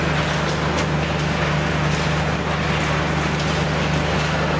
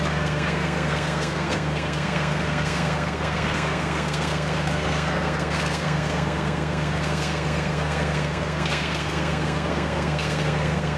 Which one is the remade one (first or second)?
second